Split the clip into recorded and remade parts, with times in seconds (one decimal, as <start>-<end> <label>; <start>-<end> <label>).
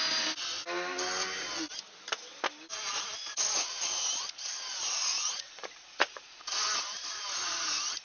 0.0-3.2 recorded; 3.2-7.2 remade; 7.2-8.0 recorded